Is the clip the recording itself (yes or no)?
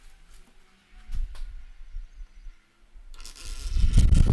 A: yes